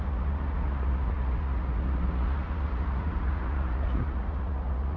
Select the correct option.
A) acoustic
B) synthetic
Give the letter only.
B